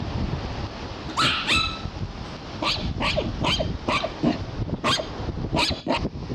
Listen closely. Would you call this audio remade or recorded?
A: recorded